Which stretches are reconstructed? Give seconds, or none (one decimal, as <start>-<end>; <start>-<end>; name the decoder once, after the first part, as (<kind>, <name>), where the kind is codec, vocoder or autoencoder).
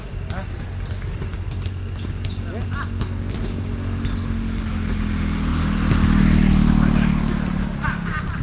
none